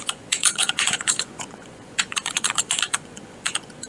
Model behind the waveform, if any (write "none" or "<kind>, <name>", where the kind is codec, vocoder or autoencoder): vocoder, Vocos